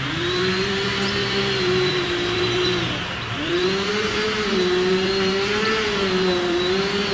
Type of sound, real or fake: fake